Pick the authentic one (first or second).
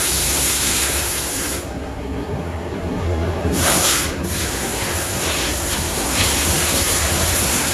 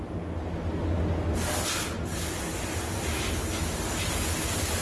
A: second